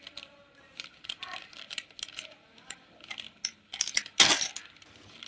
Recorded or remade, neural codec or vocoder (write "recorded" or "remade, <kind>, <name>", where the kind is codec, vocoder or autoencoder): recorded